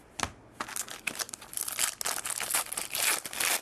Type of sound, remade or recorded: recorded